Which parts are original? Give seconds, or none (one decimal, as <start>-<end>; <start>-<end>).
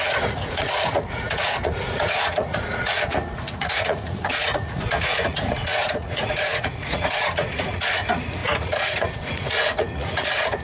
none